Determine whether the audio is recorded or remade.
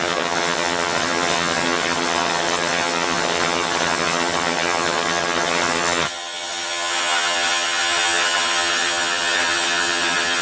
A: remade